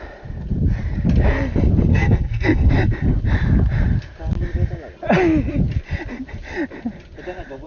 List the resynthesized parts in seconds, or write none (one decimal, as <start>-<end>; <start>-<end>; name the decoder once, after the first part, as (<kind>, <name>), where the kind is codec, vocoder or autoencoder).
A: 1.9-2.7 (codec, SNAC)